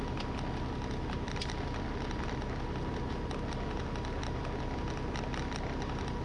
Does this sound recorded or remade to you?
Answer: recorded